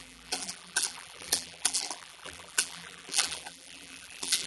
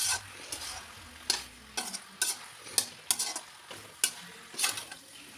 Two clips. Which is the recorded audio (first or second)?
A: second